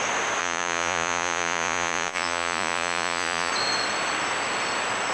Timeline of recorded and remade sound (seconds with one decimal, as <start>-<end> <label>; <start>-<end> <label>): 0.0-0.4 recorded; 0.4-3.5 remade; 3.5-5.1 recorded